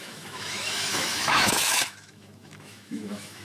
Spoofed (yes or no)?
yes